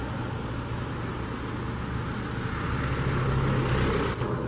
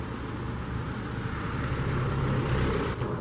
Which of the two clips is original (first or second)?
first